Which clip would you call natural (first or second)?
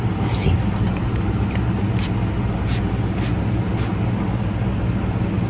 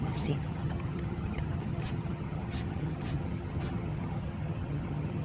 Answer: first